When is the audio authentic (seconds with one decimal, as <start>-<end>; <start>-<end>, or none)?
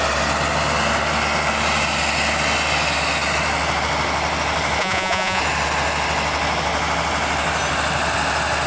0.0-4.8; 5.4-8.7